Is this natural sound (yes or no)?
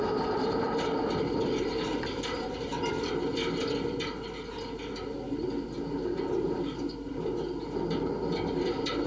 yes